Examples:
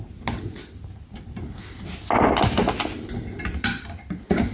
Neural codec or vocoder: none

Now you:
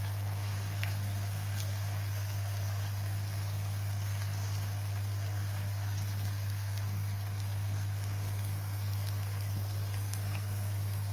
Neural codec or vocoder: codec, SNAC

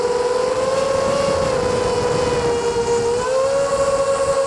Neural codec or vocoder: none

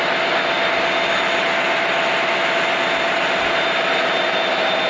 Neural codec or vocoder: none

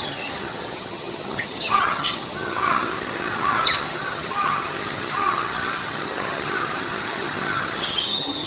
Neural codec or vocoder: vocoder, HiFi-GAN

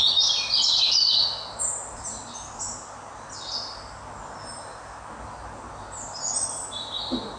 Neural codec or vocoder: none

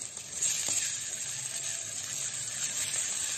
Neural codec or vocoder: none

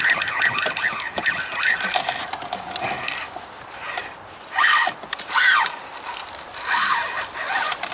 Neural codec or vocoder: none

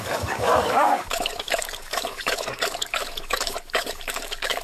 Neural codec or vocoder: codec, DAC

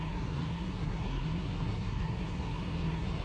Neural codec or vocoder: codec, SNAC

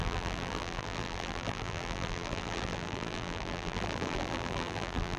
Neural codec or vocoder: vocoder, BigVGAN v2